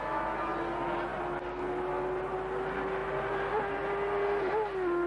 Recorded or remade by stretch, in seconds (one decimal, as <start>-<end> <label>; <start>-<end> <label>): 0.0-5.1 recorded